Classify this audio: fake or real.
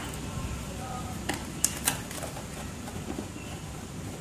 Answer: real